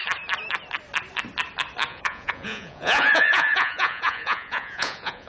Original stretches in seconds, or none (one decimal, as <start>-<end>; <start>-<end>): 0.0-1.9